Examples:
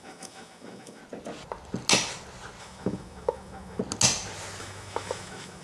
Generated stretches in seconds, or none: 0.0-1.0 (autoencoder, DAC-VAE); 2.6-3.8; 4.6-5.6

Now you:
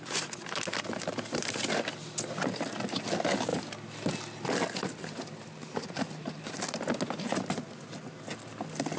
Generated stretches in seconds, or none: none

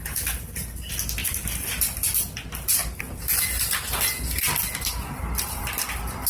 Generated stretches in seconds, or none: none

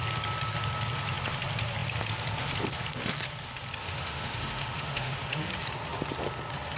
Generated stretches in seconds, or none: 3.8-5.5 (autoencoder, DAC-VAE)

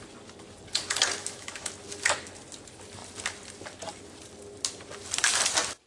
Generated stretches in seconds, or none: 1.2-1.7 (autoencoder, DAC-VAE)